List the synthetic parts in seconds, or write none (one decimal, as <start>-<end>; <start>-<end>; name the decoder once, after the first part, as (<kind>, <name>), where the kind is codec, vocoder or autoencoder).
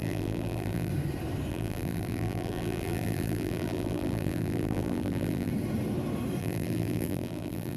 0.0-0.9 (vocoder, BigVGAN v2); 1.5-5.5; 6.4-7.8